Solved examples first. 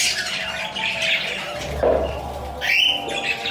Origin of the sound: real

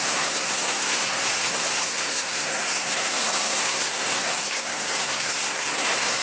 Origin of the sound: fake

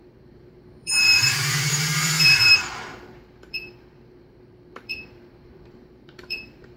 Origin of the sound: fake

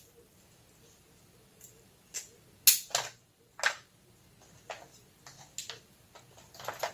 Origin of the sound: real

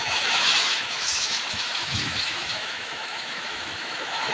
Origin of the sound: fake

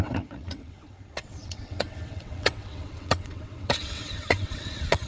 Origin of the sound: fake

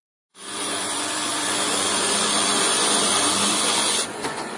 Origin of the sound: fake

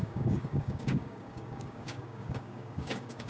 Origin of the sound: fake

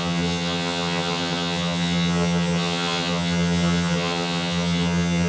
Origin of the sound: fake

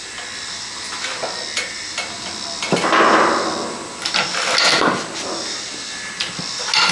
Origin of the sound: real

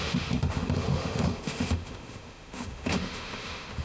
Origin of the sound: fake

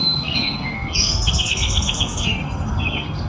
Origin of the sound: fake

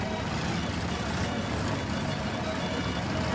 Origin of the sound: real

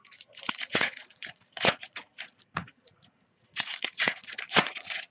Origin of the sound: fake